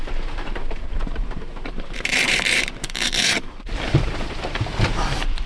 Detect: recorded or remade remade